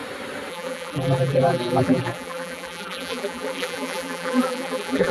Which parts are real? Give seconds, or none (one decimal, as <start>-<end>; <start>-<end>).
0.0-0.5